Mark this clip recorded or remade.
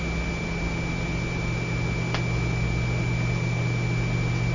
recorded